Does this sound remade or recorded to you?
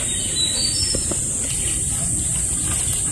recorded